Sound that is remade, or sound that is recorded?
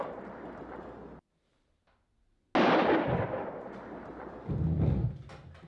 recorded